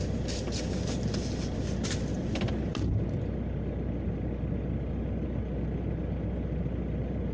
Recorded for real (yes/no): yes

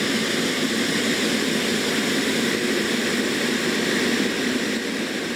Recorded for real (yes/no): yes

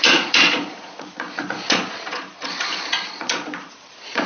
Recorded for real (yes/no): no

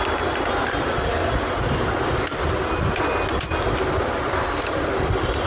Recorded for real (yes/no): yes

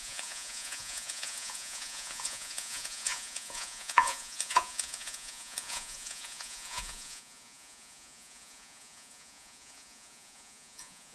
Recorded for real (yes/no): no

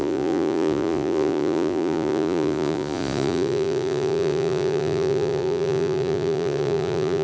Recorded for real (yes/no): no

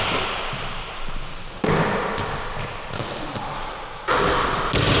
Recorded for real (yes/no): yes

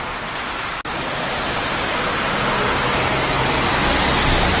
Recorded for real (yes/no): yes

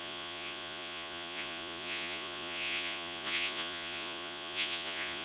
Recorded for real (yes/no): no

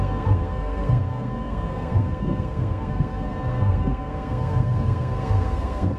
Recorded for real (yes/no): no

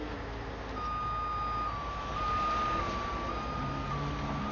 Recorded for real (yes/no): yes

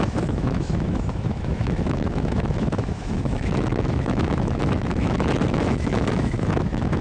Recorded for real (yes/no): no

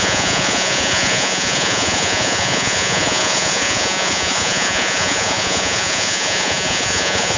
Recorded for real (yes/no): no